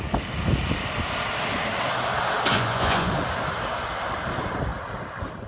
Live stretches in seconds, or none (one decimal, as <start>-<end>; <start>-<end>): 0.0-2.5; 3.1-5.5